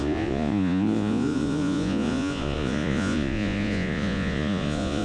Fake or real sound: fake